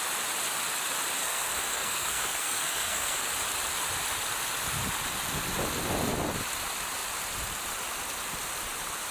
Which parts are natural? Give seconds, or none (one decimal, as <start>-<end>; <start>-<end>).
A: 0.0-1.2; 3.3-9.1